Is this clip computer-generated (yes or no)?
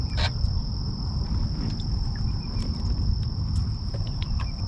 no